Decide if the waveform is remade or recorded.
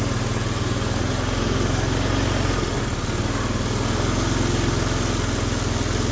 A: recorded